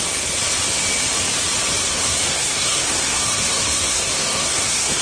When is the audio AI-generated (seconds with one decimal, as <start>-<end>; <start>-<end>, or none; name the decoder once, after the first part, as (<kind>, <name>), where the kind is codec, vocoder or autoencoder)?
1.8-5.0 (codec, SNAC)